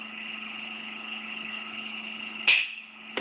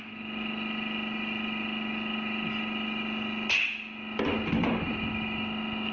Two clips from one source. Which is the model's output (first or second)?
first